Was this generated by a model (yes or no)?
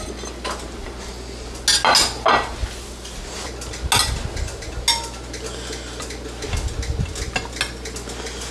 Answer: no